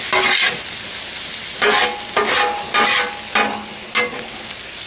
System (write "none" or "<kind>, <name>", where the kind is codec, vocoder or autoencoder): none